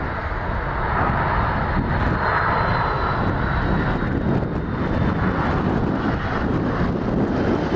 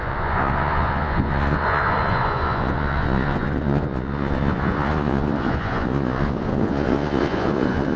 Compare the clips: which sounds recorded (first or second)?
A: first